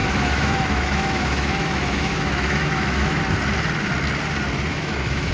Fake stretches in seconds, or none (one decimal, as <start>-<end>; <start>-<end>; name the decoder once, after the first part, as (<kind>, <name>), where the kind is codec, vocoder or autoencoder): 0.0-3.2 (autoencoder, DAC-VAE); 4.7-5.3